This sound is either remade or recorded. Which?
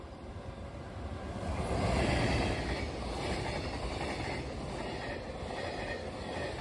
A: recorded